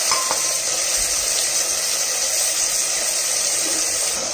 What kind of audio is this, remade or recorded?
recorded